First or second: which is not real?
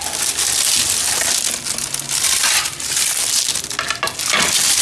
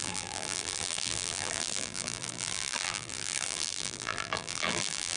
second